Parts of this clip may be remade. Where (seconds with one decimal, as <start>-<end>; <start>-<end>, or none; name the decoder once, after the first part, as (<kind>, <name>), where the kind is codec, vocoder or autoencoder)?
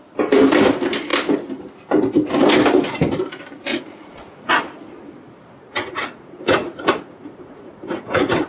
3.7-4.5 (vocoder, Vocos); 5.6-8.5